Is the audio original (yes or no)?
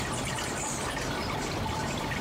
no